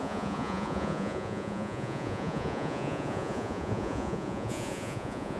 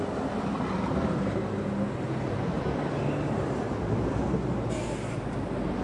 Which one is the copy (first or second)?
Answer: first